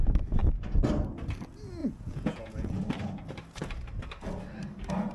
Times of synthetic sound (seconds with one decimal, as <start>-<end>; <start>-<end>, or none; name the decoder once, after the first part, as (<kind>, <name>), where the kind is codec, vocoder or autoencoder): 1.8-2.8 (vocoder, Vocos)